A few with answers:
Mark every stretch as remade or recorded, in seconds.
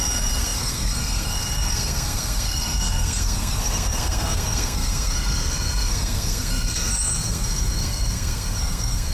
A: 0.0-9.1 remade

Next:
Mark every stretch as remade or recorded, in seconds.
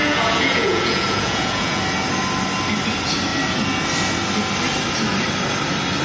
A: 0.0-1.8 remade; 1.8-6.0 recorded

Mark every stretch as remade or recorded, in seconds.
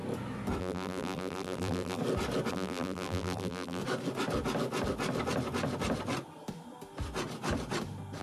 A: 0.0-0.6 recorded; 0.6-2.0 remade; 2.0-2.5 recorded; 2.5-3.8 remade; 3.8-8.2 recorded